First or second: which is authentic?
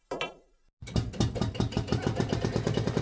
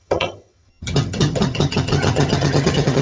first